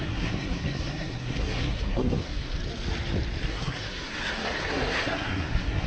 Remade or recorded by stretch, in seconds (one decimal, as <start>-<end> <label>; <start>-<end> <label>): 0.0-2.6 remade; 2.6-3.4 recorded; 3.4-5.9 remade